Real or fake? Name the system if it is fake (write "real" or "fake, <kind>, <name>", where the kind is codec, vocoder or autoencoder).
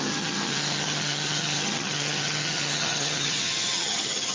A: fake, vocoder, HiFi-GAN